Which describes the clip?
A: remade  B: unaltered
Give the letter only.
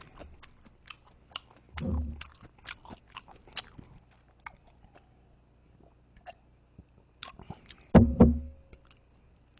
B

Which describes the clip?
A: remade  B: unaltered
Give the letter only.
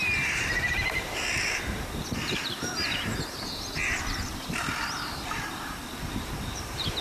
A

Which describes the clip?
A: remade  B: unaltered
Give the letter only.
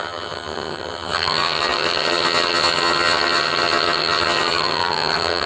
A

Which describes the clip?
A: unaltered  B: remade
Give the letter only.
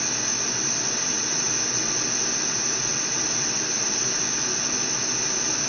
A